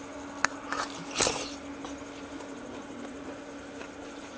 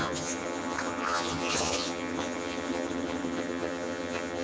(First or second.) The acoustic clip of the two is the first